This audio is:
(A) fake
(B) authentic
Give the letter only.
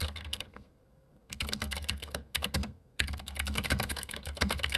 A